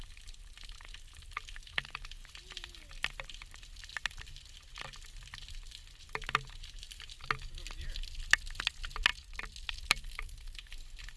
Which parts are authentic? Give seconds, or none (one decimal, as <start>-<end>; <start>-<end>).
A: 0.0-11.2